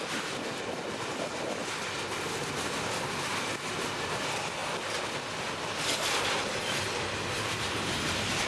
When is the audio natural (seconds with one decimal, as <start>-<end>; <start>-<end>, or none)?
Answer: 0.0-8.5